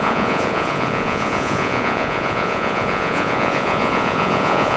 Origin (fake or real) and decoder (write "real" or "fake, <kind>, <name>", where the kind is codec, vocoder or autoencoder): fake, vocoder, Vocos